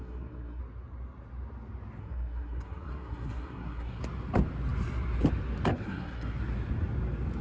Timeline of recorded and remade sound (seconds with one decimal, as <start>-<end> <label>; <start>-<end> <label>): 0.0-0.6 remade; 0.6-2.0 recorded; 2.0-4.0 remade; 4.0-5.7 recorded; 5.7-6.4 remade; 6.4-7.4 recorded